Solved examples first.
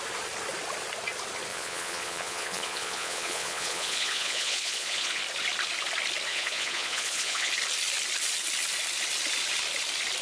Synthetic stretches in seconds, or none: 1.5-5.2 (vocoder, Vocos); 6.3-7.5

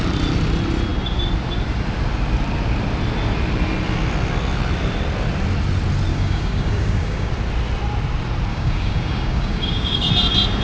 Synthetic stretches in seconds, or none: 6.1-7.3 (codec, DAC); 8.5-10.1